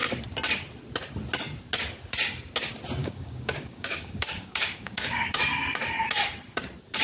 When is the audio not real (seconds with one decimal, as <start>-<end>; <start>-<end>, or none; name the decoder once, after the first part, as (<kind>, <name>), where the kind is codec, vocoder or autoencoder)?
3.0-5.4 (codec, DAC)